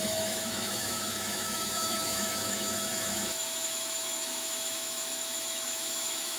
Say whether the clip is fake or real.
fake